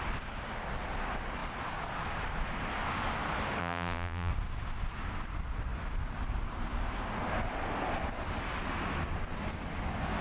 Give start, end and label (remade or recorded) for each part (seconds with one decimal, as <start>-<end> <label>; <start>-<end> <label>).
0.0-3.6 recorded; 3.6-4.3 remade; 4.3-10.2 recorded